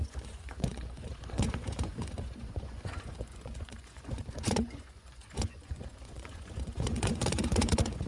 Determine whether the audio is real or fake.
fake